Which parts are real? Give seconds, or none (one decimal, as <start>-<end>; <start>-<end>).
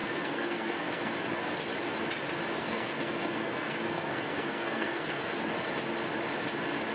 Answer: 1.1-2.6; 5.3-6.9